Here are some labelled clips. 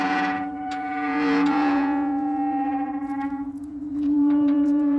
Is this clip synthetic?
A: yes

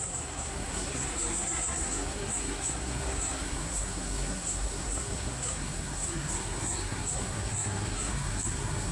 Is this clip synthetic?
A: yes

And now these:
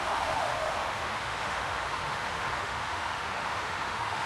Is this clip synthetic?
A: yes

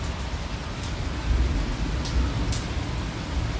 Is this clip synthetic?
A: no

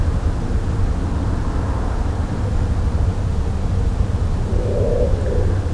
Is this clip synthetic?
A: no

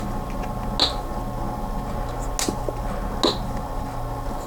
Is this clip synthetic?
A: no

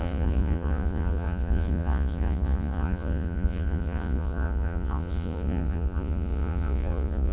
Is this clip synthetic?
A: yes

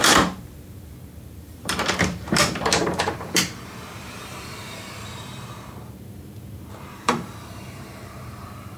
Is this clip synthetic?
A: yes